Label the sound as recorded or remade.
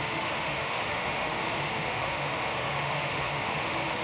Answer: remade